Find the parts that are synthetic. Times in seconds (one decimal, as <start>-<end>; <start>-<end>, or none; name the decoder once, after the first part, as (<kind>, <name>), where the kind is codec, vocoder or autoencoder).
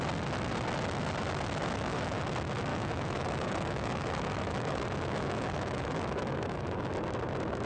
1.6-2.2 (autoencoder, DAC-VAE); 2.7-6.9